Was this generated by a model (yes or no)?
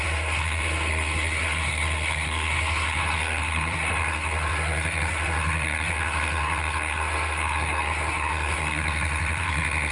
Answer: yes